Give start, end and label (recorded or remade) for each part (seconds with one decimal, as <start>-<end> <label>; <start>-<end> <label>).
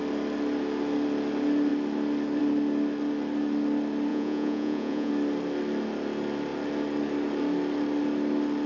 0.0-4.1 recorded; 4.1-5.1 remade; 5.1-8.7 recorded